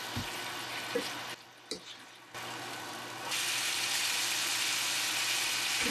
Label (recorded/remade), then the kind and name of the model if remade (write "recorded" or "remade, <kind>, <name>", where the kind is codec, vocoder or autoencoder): recorded